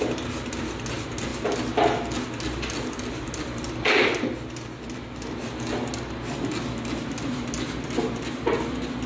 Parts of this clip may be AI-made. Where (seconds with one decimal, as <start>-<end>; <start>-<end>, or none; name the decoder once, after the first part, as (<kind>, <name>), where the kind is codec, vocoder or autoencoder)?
none